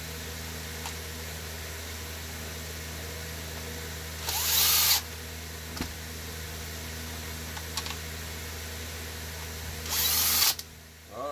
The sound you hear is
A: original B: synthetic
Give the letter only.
A